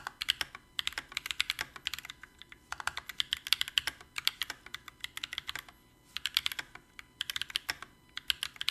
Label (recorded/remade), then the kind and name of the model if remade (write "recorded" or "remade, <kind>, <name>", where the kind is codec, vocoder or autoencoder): recorded